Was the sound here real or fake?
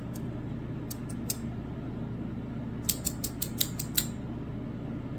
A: real